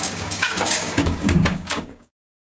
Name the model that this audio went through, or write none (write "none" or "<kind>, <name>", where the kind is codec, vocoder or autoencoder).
codec, DAC